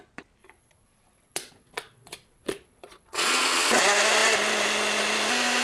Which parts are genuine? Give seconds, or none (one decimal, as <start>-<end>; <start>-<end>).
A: 0.0-0.4; 3.8-5.6